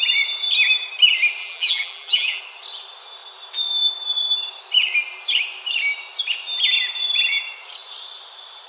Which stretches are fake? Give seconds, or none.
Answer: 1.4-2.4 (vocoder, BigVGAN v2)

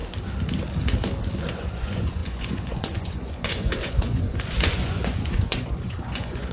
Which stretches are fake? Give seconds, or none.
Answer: 1.5-6.5 (vocoder, Vocos)

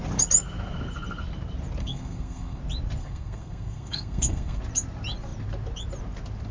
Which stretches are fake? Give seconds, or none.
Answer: 1.8-2.6 (codec, SNAC); 3.0-4.6